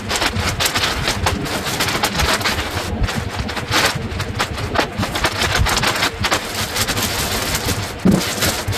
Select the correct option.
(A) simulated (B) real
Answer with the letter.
B